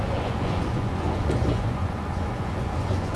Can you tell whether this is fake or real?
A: fake